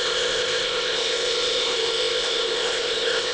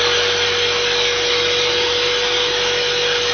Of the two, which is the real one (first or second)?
second